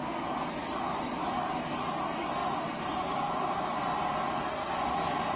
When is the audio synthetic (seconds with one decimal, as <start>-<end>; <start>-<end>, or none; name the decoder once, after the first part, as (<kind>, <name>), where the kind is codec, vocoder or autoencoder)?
none